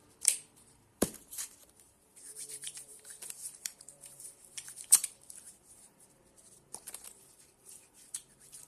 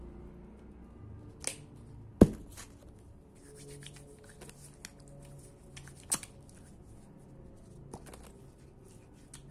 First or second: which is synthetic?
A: first